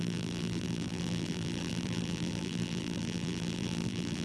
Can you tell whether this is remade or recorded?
remade